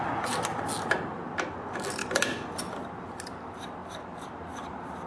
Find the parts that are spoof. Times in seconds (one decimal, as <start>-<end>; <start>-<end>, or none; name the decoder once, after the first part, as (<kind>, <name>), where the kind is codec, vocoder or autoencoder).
none